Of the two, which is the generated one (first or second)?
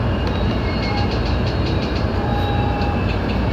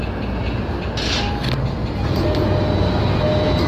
first